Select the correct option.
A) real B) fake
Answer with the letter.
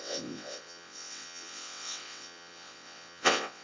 B